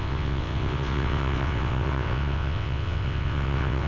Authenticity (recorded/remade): remade